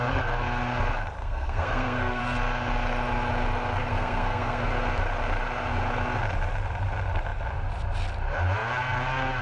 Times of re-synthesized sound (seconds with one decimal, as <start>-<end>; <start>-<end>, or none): 1.2-2.2; 3.8-4.6